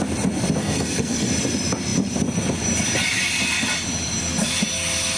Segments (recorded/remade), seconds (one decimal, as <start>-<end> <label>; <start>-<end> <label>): 0.0-0.6 recorded; 0.6-1.3 remade; 1.3-5.2 recorded